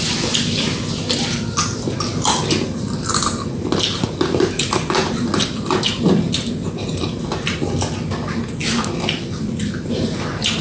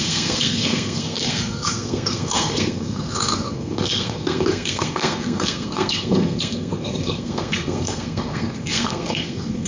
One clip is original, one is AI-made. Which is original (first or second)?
first